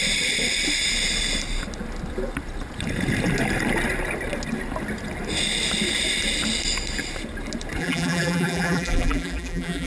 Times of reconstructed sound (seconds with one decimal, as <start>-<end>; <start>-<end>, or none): 7.8-9.9